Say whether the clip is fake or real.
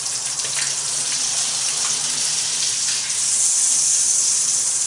fake